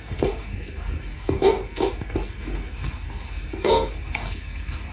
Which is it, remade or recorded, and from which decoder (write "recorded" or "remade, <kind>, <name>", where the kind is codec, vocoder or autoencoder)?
remade, codec, SNAC